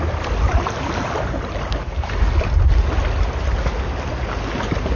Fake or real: real